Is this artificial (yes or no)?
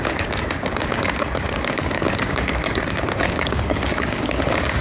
yes